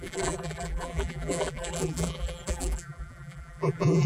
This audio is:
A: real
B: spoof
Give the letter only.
B